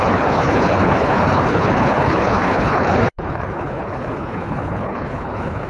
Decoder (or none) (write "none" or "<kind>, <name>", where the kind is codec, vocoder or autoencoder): codec, HILCodec